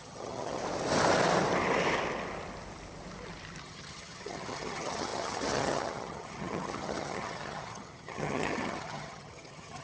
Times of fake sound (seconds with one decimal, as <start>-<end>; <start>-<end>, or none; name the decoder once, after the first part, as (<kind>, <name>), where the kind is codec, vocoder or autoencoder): 0.0-0.6 (vocoder, HiFi-GAN); 3.6-9.8